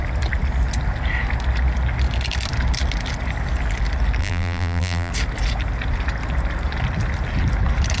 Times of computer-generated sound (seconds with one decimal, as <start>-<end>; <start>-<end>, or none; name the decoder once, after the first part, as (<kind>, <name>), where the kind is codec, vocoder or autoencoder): 4.2-5.1 (vocoder, BigVGAN v2)

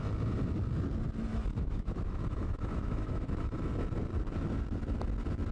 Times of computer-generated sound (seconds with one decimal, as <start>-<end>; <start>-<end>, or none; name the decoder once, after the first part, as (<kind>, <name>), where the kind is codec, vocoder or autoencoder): 1.3-3.6 (autoencoder, DAC-VAE)

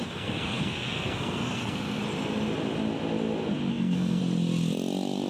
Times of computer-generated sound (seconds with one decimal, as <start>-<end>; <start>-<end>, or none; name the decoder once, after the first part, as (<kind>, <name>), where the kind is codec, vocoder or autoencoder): 0.0-2.0 (codec, SNAC); 3.7-4.2